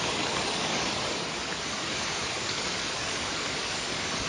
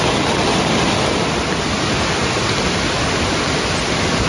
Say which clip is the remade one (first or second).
first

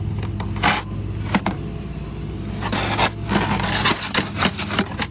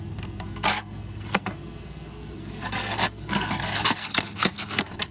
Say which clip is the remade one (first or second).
second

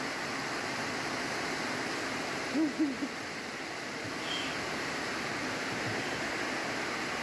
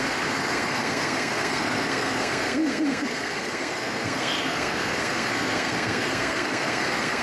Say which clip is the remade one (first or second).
second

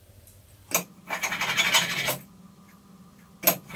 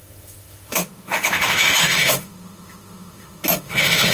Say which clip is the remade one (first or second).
second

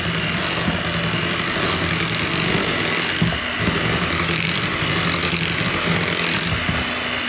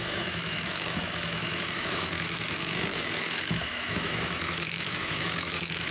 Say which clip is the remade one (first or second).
second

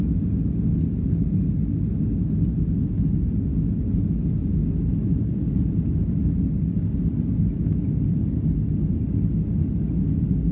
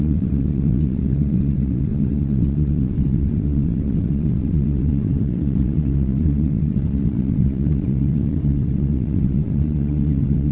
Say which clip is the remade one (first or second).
second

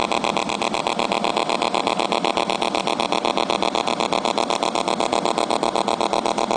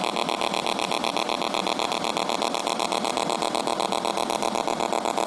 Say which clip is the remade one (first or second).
second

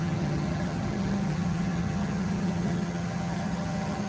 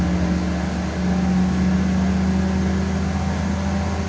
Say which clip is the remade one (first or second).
first